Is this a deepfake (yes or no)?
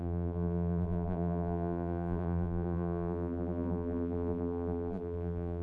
yes